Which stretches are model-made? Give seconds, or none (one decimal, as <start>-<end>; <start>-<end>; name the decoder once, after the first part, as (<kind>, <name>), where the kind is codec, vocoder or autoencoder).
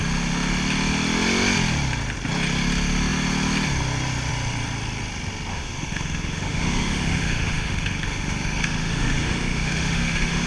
5.5-10.5 (autoencoder, DAC-VAE)